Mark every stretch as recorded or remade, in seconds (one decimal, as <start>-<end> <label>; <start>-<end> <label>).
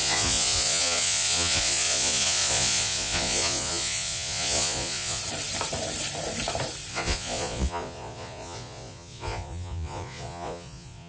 0.0-5.2 remade; 5.2-6.9 recorded; 6.9-11.1 remade